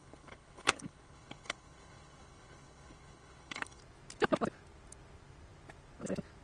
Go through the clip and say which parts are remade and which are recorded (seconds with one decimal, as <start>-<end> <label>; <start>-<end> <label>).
0.0-3.8 remade; 3.8-6.4 recorded